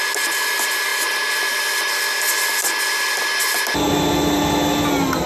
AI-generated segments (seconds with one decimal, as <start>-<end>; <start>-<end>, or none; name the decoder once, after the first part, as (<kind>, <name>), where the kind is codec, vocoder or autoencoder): none